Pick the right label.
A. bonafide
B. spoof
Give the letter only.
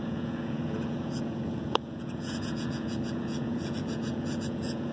B